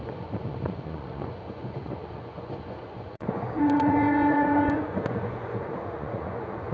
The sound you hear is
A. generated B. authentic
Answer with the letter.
A